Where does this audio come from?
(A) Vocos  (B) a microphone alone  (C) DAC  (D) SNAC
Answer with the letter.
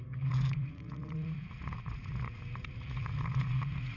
A